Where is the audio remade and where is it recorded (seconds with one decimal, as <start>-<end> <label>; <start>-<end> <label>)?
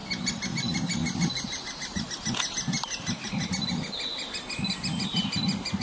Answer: 0.0-5.8 recorded